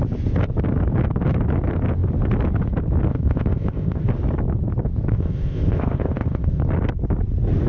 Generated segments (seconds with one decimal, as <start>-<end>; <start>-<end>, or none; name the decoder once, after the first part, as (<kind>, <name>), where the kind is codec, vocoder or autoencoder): 3.1-4.0 (codec, ZipCodec); 5.1-6.6